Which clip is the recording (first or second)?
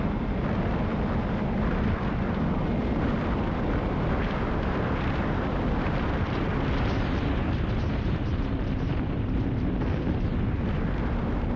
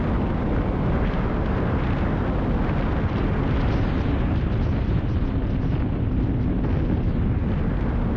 second